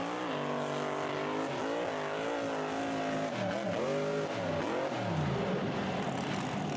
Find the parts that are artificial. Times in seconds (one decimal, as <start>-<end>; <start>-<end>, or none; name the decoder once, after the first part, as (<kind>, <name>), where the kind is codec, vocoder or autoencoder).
none